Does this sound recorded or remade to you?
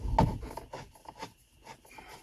recorded